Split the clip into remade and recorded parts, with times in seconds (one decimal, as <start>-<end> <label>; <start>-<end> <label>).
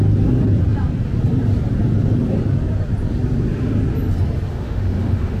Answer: 0.0-4.5 recorded; 4.5-5.4 remade